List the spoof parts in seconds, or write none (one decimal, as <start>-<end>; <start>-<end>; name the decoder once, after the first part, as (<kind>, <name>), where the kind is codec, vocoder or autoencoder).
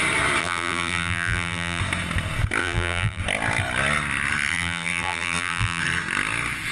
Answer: 0.4-1.8 (vocoder, BigVGAN v2); 2.6-3.2; 4.5-5.8